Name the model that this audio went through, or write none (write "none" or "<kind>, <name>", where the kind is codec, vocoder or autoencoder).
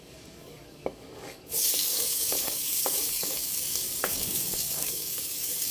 codec, DAC